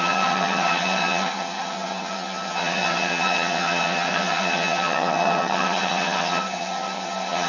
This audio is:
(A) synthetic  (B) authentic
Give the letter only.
A